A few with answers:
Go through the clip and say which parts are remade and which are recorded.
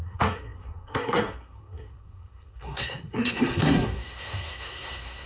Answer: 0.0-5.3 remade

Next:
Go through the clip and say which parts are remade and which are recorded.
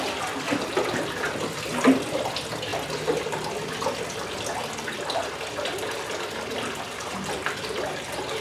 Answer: 0.0-8.4 recorded